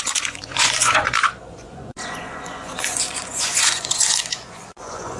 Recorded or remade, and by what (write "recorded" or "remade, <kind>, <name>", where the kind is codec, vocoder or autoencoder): remade, vocoder, Vocos